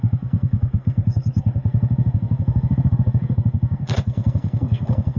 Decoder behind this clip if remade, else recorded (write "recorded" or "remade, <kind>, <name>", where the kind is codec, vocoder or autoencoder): remade, codec, SNAC